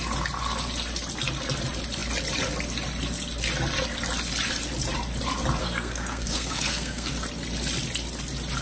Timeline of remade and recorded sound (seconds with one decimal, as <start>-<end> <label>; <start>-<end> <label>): 0.0-5.6 recorded; 5.6-7.1 remade; 7.1-8.6 recorded